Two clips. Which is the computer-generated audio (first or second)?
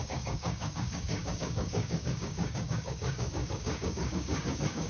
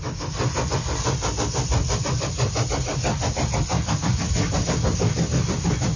first